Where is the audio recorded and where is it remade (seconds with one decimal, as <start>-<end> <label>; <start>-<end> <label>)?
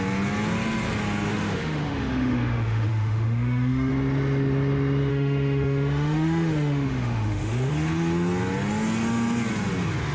0.0-1.3 recorded; 1.3-3.9 remade; 3.9-5.1 recorded; 5.1-7.7 remade; 7.7-10.1 recorded